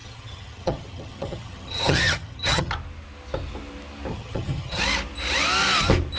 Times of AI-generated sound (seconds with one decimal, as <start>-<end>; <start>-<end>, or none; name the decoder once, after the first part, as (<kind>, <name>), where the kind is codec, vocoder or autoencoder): 0.0-2.7 (vocoder, HiFi-GAN); 4.1-4.8